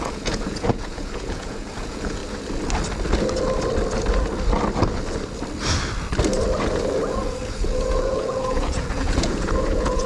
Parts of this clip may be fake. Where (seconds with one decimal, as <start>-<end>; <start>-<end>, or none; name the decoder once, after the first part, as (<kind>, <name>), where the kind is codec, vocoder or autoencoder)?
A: 0.0-2.2 (vocoder, Vocos); 7.1-10.1